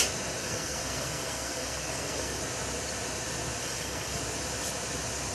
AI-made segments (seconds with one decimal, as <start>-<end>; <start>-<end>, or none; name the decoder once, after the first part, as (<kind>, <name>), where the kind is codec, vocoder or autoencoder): 0.4-2.4 (codec, SNAC); 3.6-4.2